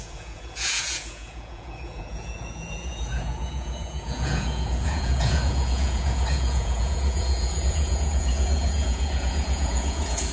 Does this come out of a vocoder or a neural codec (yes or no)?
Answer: yes